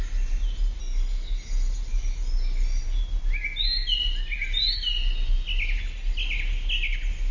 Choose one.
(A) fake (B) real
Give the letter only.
B